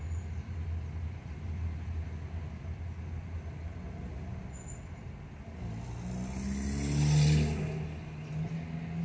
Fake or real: real